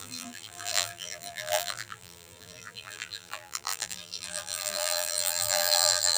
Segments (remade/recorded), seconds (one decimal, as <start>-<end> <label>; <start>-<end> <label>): 0.0-6.2 remade